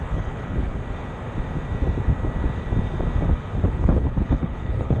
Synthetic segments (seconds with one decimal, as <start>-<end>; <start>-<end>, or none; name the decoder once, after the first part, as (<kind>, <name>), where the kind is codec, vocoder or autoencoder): 0.0-0.7 (codec, HILCodec); 3.7-5.0